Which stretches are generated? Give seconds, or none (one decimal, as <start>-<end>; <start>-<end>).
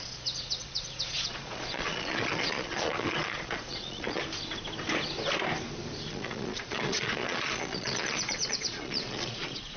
0.0-4.2; 6.1-9.8